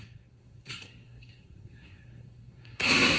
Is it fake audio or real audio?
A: fake